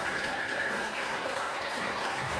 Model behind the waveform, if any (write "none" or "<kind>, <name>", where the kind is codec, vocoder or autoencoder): codec, SNAC